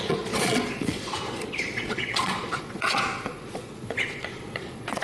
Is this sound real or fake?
fake